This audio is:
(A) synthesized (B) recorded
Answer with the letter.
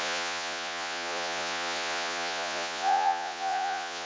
A